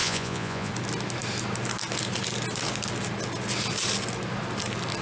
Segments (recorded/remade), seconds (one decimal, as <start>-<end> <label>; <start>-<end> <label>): 0.0-0.7 remade; 0.7-5.0 recorded